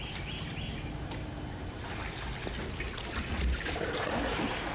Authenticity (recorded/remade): recorded